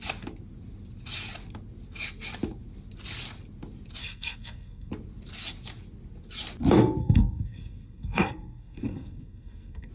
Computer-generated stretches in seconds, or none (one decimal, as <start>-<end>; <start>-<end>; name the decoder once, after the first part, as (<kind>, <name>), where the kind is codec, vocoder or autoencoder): 4.0-4.9 (codec, SNAC); 7.0-9.9